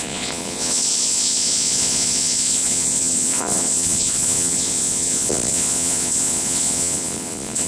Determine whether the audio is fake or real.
fake